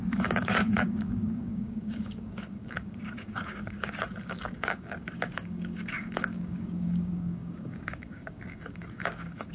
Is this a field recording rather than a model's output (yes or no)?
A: no